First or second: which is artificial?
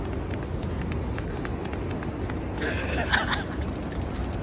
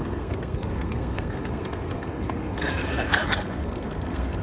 second